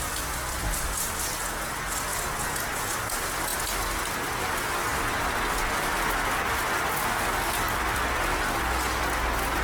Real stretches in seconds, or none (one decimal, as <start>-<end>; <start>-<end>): 0.0-9.6